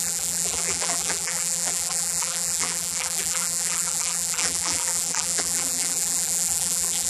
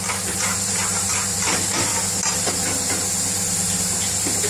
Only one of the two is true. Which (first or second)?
second